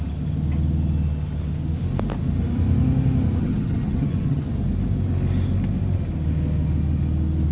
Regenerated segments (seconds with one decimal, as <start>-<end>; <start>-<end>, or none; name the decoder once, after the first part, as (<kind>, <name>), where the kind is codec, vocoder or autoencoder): 3.4-4.4 (vocoder, HiFi-GAN)